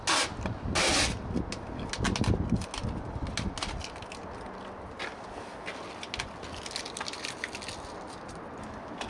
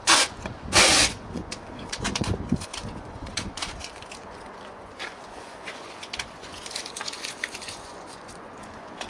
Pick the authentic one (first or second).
first